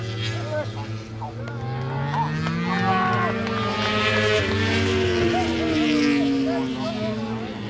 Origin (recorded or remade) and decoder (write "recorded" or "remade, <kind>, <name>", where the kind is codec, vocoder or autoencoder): recorded